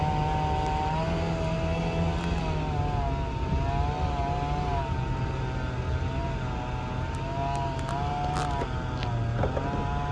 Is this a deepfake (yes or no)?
no